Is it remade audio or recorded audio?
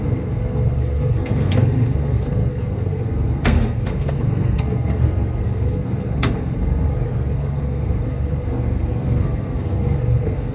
remade